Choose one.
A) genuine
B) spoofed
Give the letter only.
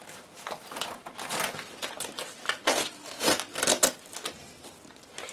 A